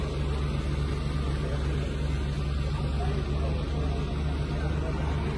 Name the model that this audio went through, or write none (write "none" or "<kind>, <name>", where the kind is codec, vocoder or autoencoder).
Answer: none